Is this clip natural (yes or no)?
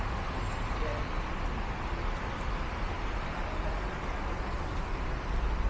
yes